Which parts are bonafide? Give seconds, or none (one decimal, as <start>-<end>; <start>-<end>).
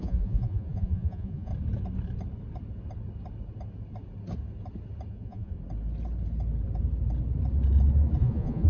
1.5-5.1; 5.5-8.2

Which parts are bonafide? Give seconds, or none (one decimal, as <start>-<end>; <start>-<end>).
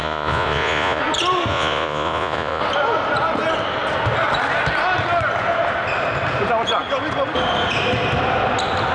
1.0-1.5; 2.6-8.9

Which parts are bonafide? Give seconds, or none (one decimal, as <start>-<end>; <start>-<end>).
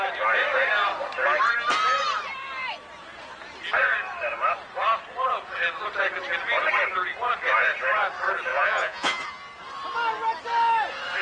0.0-8.5; 9.5-11.2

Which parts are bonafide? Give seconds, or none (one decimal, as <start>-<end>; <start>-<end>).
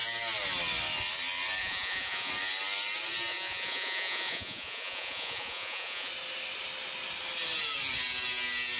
0.0-1.6; 2.3-3.3; 6.1-8.8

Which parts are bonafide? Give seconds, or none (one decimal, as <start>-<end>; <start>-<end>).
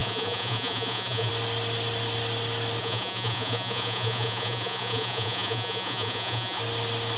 1.3-2.8; 6.6-7.2